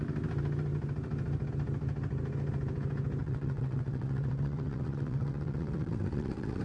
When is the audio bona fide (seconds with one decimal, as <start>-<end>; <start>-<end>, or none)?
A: 0.0-3.2